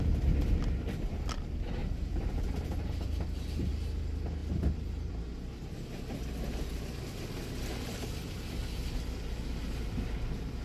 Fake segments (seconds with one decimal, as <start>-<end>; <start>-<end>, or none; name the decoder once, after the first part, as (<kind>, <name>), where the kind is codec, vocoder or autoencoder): 1.8-3.7 (vocoder, BigVGAN v2)

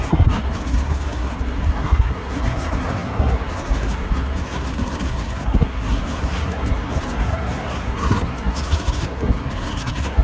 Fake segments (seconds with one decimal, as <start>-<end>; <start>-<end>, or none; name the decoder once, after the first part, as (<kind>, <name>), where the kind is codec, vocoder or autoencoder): 0.0-10.2 (codec, SNAC)